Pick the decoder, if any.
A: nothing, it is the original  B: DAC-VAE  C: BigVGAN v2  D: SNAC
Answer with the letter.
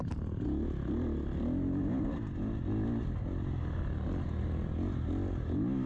A